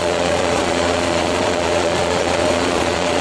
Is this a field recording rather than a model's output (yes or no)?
no